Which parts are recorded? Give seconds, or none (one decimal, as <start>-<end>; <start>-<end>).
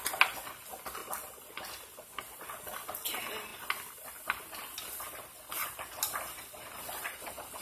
0.0-7.6